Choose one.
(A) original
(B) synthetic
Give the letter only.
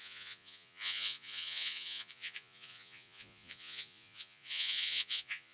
B